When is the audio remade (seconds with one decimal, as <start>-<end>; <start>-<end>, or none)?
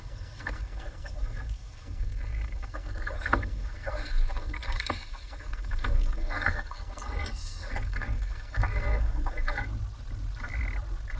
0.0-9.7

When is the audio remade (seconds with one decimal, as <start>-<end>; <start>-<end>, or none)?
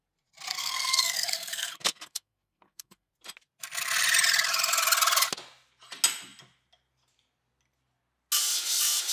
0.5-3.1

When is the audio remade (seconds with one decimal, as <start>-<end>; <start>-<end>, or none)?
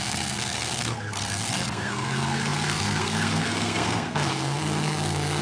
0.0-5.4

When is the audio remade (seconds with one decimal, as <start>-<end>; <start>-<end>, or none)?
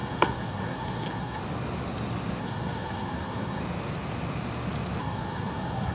0.0-1.4; 2.4-3.6; 5.0-5.9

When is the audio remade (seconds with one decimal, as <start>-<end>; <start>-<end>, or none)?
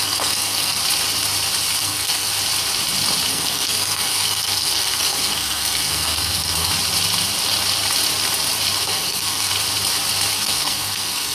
0.0-0.8; 1.8-2.3; 3.3-6.7; 8.8-9.5; 10.3-11.3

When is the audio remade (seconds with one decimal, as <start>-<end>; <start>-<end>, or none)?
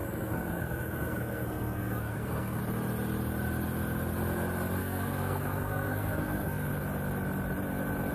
0.0-2.6; 4.8-6.7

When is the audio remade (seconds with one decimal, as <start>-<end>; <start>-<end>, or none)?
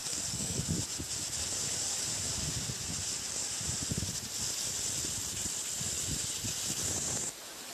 0.0-0.6